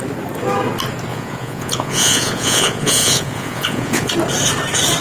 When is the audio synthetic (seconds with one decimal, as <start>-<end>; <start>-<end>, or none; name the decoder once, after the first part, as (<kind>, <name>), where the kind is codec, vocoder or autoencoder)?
1.1-4.1 (vocoder, Vocos)